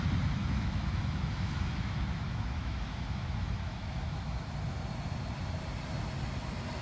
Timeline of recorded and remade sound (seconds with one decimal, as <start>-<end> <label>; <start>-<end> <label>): 0.0-0.4 recorded; 0.4-4.5 remade; 4.5-6.8 recorded